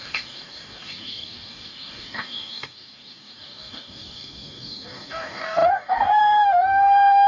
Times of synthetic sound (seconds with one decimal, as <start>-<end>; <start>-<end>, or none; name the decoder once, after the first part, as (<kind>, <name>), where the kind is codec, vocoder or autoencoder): 0.0-7.3 (codec, DAC)